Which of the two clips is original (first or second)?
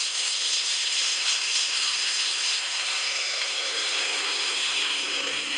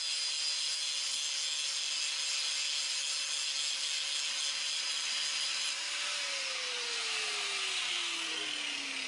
second